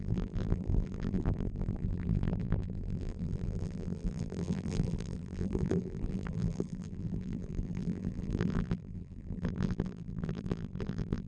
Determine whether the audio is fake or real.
fake